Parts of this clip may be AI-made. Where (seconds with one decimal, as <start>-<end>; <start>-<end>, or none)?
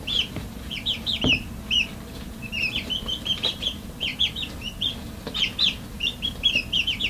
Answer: 0.0-4.1